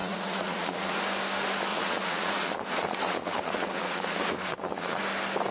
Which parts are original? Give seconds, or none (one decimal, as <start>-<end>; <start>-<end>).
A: 1.0-1.7; 5.0-5.5